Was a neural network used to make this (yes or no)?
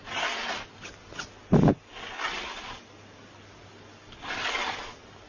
no